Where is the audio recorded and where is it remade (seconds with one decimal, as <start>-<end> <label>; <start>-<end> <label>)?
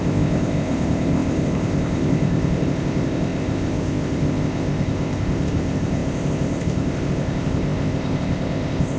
0.0-9.0 remade